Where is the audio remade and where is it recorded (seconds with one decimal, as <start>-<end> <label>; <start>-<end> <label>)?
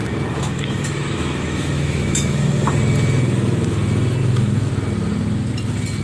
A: 0.0-2.7 remade; 2.7-4.2 recorded; 4.2-4.7 remade; 4.7-6.0 recorded